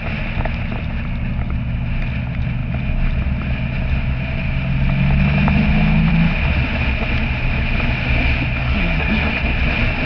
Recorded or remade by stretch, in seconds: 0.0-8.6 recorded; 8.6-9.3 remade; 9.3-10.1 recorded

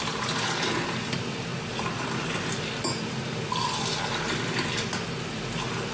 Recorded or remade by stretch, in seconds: 0.0-5.9 recorded

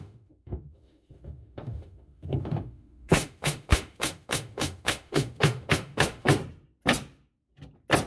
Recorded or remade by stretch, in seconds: 0.0-6.4 remade; 6.4-8.1 recorded

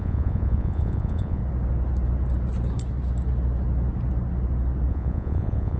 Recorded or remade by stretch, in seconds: 0.0-1.4 remade; 1.4-4.9 recorded; 4.9-5.8 remade

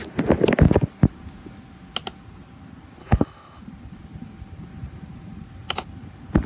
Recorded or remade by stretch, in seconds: 0.0-3.0 recorded; 3.0-3.6 remade; 3.6-6.5 recorded

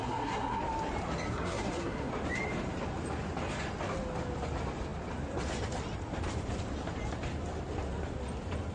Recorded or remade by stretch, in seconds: 0.0-0.6 remade; 0.6-1.3 recorded; 1.3-2.1 remade; 2.1-8.7 recorded